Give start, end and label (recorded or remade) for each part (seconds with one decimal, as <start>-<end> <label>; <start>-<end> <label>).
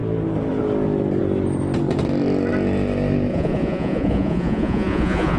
0.0-3.3 recorded; 3.3-5.4 remade